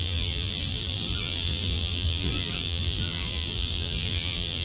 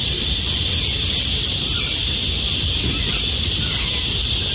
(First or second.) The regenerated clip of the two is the first